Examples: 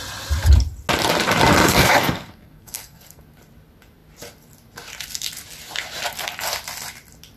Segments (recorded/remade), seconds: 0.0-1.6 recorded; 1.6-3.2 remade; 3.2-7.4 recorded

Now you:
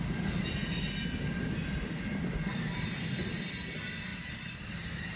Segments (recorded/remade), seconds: 0.0-4.1 recorded; 4.1-5.2 remade